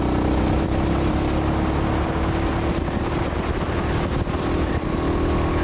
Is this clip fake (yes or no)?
no